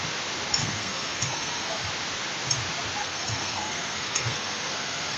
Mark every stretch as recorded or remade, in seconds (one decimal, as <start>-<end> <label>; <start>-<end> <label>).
0.0-0.6 recorded; 0.6-1.9 remade; 1.9-3.0 recorded; 3.0-5.2 remade